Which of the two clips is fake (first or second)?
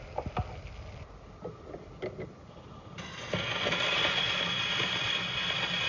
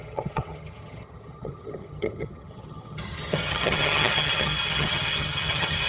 second